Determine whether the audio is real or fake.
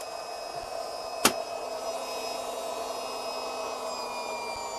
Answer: real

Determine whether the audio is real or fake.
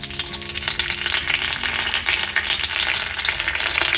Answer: real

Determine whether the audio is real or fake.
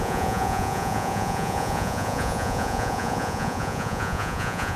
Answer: fake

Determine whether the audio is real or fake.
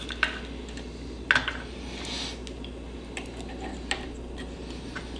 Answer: real